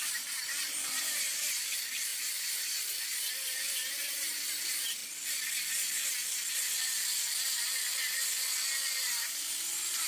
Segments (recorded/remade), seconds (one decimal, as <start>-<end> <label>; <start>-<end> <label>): 0.0-5.0 remade; 5.0-8.9 recorded; 8.9-10.1 remade